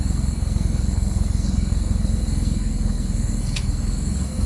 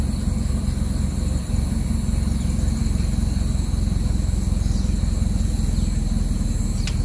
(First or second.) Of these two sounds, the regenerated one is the first